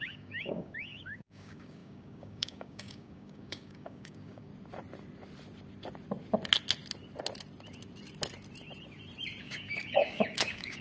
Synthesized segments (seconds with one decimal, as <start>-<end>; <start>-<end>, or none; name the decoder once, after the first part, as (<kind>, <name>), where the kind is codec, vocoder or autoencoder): 0.0-4.5 (codec, DAC); 9.4-10.8